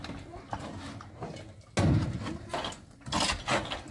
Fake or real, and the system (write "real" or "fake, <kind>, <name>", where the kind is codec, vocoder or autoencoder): real